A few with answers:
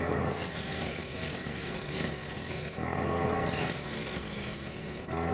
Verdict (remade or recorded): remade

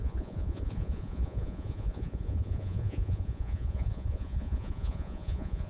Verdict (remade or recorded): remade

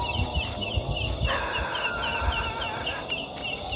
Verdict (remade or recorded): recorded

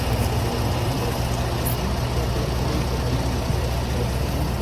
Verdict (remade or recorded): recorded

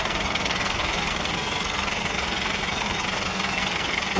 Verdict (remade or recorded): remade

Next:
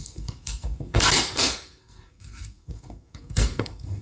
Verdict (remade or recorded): remade